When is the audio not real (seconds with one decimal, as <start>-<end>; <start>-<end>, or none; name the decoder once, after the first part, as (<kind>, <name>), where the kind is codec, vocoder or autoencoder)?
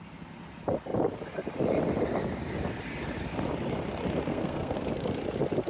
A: 4.3-4.9 (codec, SNAC)